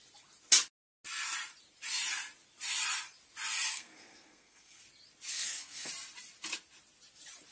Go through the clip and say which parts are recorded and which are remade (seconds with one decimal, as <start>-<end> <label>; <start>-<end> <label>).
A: 0.0-3.7 recorded; 3.7-4.8 remade; 4.8-5.3 recorded; 5.3-5.9 remade; 5.9-7.5 recorded